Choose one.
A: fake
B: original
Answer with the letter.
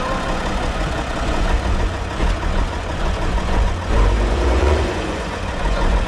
A